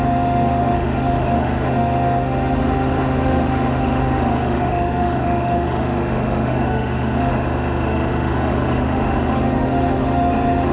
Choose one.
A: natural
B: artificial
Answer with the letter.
B